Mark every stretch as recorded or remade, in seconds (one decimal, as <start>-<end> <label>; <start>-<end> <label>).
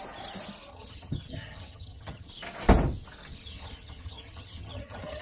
0.0-0.7 recorded; 0.7-2.3 remade; 2.3-3.3 recorded; 3.3-5.2 remade